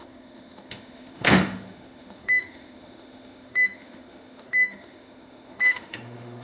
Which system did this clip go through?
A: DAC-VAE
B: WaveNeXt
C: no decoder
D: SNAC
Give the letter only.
A